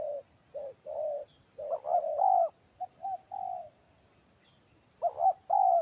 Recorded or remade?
recorded